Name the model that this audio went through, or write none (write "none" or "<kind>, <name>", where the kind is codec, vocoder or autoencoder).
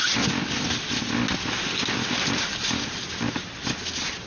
none